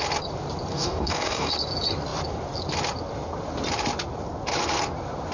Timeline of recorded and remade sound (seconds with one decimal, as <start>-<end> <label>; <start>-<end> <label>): 0.0-0.7 recorded; 0.7-1.5 remade; 1.5-5.3 recorded